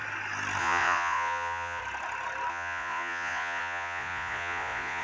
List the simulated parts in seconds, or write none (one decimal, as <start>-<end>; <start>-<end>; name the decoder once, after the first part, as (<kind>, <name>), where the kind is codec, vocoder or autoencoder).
0.6-1.8 (vocoder, Vocos); 2.5-5.0